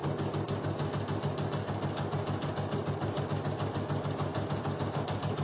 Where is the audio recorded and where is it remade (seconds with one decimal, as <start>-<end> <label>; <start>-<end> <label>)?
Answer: 0.0-5.4 recorded